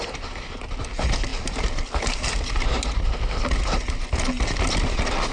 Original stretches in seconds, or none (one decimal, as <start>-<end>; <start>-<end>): 0.0-5.3